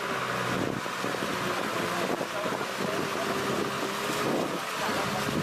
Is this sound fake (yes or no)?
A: no